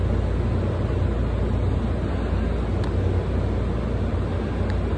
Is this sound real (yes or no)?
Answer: yes